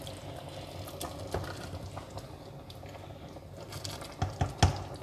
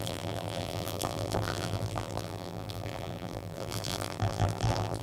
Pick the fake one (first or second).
second